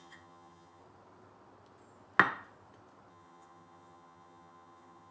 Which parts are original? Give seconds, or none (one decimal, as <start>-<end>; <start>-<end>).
0.8-3.1